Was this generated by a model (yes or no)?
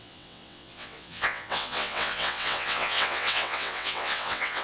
yes